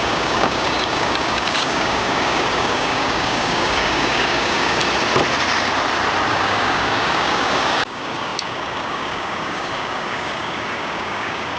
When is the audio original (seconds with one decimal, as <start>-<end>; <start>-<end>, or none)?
4.8-6.3